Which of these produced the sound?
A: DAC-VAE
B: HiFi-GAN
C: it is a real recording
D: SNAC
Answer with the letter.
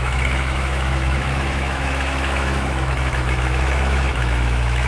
A